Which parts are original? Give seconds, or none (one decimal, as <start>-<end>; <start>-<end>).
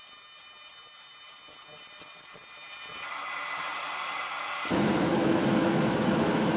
0.0-5.1